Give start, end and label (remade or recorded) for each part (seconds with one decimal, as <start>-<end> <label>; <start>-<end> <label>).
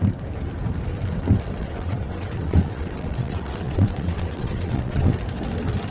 0.0-1.6 recorded; 1.6-5.1 remade; 5.1-5.9 recorded